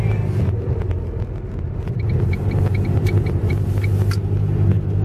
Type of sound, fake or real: real